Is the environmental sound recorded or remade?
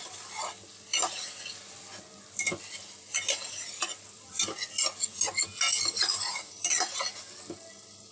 recorded